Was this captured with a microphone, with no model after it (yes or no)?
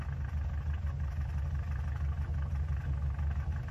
yes